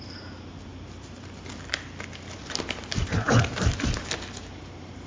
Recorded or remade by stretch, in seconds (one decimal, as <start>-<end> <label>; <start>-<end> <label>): 0.0-5.1 recorded